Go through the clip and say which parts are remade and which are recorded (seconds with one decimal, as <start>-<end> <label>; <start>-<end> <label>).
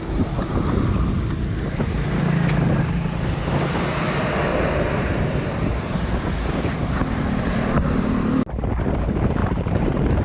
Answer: 0.0-4.5 recorded; 4.5-6.0 remade; 6.0-9.4 recorded; 9.4-10.2 remade